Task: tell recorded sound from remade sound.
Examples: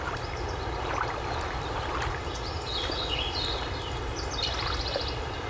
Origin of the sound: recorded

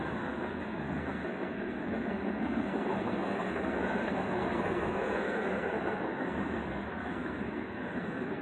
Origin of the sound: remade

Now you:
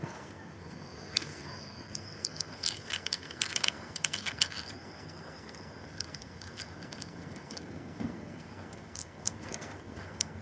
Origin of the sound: remade